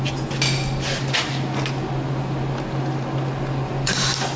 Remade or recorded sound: recorded